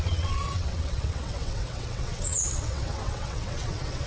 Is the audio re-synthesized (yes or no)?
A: yes